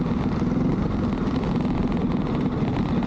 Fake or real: real